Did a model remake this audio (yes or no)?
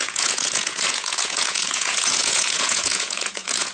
yes